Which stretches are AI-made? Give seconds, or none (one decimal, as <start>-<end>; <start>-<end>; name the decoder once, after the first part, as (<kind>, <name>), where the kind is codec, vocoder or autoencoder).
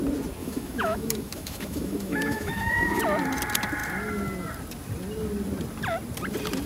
0.4-3.0 (autoencoder, DAC-VAE)